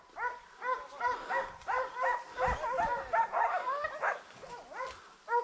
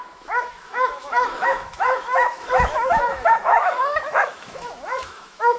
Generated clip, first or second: second